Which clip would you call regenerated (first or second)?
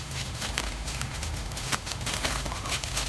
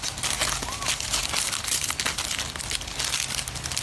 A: first